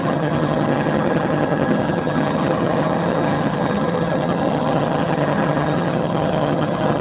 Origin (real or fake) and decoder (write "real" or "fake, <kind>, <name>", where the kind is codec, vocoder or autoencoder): fake, vocoder, HiFi-GAN